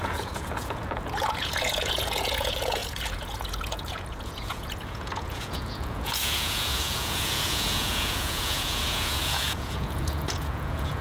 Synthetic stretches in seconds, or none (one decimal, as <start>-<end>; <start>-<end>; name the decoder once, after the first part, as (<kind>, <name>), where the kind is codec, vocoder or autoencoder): 0.0-11.0 (vocoder, Vocos)